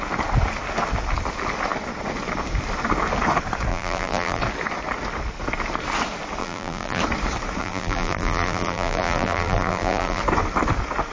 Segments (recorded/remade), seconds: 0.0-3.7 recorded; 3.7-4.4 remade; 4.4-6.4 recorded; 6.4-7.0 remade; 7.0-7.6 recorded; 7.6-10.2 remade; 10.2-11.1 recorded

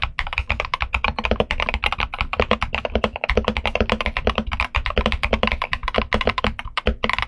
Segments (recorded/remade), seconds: 0.0-7.3 recorded